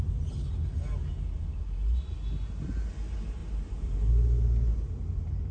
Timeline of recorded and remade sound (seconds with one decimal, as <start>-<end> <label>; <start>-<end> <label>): 0.0-5.5 recorded